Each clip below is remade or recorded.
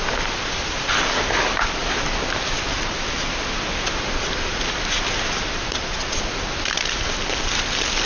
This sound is remade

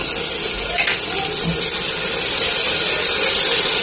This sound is recorded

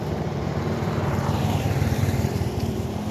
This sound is remade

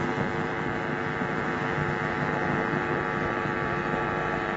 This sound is remade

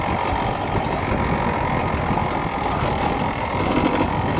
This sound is recorded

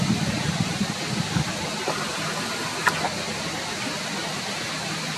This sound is recorded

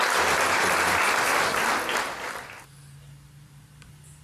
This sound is remade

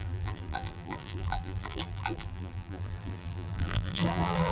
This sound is remade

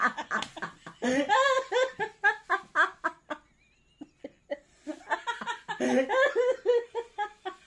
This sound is recorded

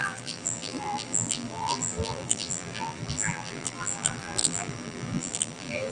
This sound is remade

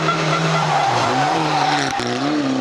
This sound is remade